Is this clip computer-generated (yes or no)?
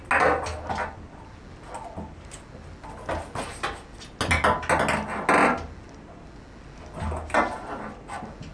no